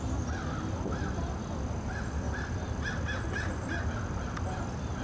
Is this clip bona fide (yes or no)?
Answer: yes